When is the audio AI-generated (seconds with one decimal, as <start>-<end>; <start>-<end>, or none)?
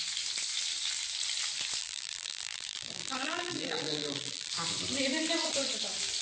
1.8-4.5